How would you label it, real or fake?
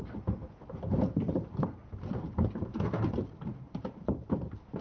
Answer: fake